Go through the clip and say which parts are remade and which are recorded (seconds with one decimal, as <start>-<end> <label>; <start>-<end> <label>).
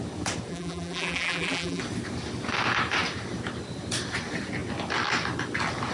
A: 0.0-0.5 recorded; 0.5-1.8 remade; 1.8-5.9 recorded